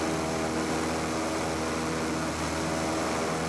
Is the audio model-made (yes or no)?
no